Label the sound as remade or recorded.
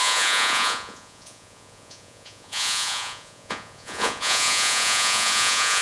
remade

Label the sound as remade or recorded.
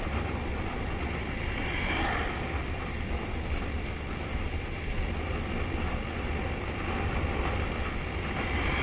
recorded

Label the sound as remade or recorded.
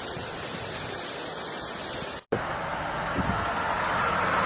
recorded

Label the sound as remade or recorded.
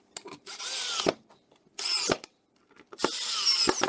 recorded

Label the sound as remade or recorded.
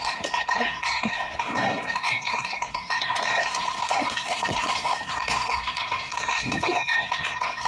remade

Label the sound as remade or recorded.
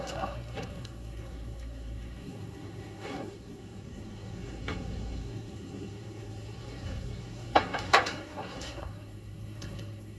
remade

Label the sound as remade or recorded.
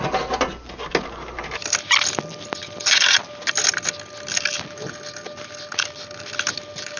recorded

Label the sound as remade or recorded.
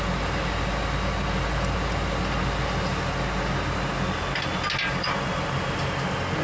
recorded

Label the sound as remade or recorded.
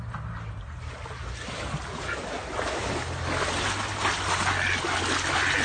recorded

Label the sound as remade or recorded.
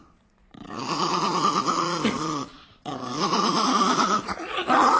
remade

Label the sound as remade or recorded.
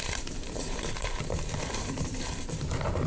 remade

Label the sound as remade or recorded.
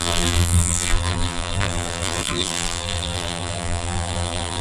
remade